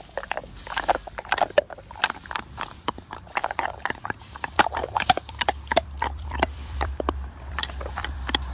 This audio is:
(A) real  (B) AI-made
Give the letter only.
B